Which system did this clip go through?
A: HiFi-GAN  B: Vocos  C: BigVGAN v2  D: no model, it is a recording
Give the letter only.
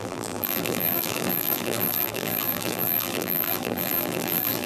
C